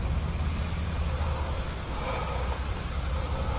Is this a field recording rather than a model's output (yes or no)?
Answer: yes